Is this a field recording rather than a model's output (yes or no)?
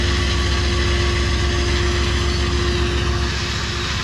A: yes